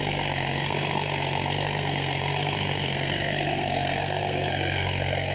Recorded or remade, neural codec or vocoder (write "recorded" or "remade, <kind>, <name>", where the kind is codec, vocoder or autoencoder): remade, codec, SNAC